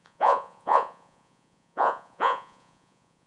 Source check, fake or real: fake